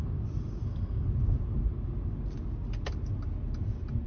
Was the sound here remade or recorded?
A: recorded